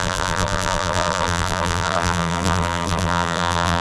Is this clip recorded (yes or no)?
no